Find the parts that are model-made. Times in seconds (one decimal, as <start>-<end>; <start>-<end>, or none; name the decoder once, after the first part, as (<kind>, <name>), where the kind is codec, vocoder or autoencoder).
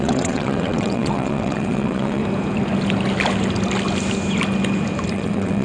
0.0-2.2 (vocoder, WaveNeXt); 5.1-5.6